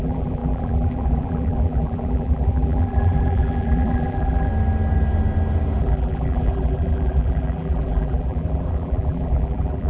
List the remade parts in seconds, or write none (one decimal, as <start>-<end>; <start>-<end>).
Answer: 0.0-4.5; 5.8-9.9

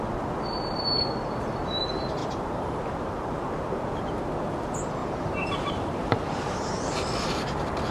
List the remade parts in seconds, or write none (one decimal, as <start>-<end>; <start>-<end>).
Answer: 2.2-4.2; 5.0-6.8

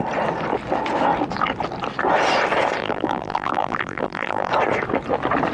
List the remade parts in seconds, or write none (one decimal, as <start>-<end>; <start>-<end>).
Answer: 2.8-4.5